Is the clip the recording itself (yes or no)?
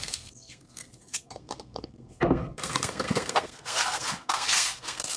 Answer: no